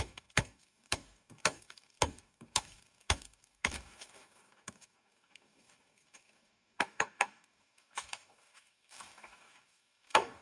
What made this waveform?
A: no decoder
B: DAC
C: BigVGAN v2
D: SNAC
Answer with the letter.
B